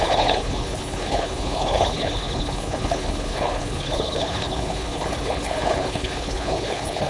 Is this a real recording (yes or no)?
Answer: no